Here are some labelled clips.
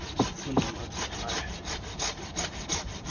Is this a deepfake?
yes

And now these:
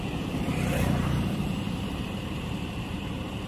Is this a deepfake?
yes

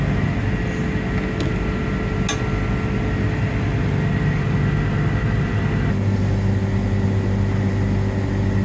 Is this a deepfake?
no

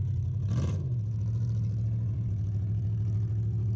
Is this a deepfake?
yes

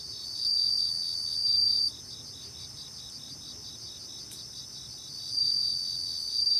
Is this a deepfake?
no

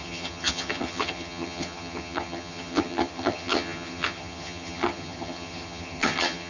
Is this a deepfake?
yes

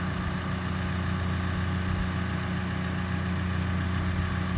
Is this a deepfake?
no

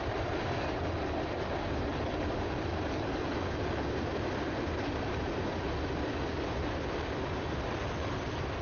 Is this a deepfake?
no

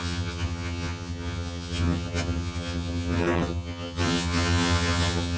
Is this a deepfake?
yes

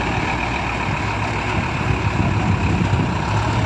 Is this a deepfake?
no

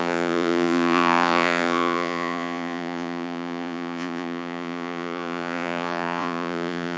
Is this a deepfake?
yes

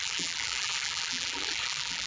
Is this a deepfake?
yes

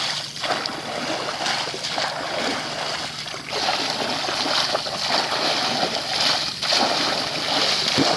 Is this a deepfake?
no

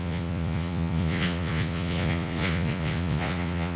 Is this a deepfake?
yes